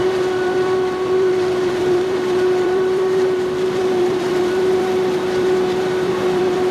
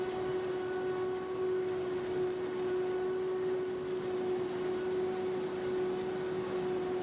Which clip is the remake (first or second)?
first